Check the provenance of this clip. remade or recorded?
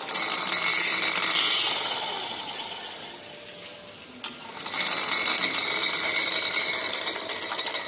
recorded